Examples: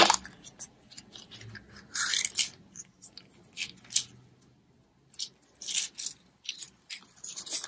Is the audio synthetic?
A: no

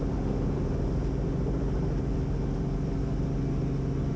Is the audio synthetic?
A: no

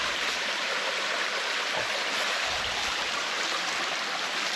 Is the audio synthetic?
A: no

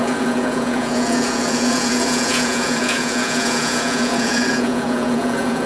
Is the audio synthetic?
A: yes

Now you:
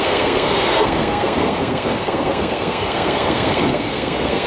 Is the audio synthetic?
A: yes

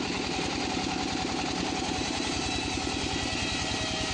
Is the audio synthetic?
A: no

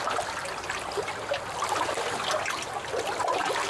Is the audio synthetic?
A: no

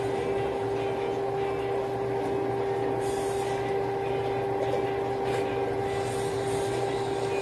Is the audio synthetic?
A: no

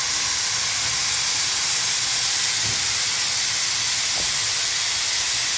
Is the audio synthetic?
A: yes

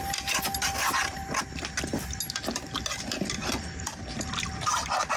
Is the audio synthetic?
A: no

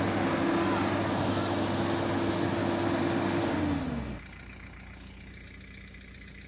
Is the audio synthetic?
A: no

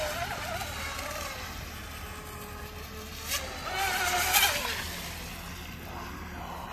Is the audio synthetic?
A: no